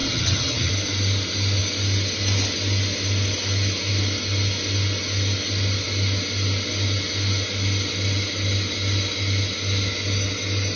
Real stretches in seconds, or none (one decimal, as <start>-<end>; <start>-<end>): 0.7-10.8